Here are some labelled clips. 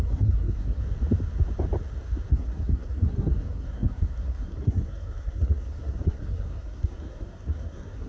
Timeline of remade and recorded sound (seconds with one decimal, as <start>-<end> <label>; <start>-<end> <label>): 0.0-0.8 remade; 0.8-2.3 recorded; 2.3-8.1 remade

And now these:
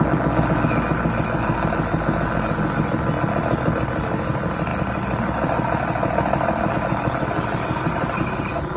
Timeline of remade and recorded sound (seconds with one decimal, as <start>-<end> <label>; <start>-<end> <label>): 0.0-8.8 recorded

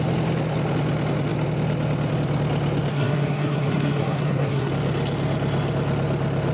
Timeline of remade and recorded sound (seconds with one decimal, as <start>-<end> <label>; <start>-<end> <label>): 0.0-2.9 recorded; 2.9-4.7 remade; 4.7-6.5 recorded

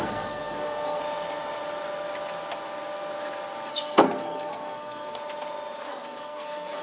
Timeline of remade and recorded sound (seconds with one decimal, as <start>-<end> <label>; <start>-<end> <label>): 0.0-1.0 remade; 1.0-3.7 recorded; 3.7-5.2 remade; 5.2-5.8 recorded; 5.8-6.8 remade

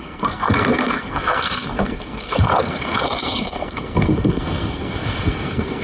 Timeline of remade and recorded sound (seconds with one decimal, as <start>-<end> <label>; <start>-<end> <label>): 0.0-5.8 remade

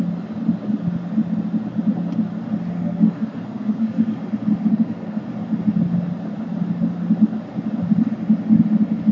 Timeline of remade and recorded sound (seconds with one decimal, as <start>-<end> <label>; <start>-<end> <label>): 0.0-2.8 recorded; 2.8-4.2 remade; 4.2-4.7 recorded; 4.7-5.2 remade; 5.2-9.1 recorded